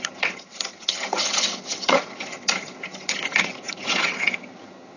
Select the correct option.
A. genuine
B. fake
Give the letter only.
B